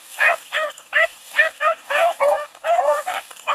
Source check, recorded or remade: remade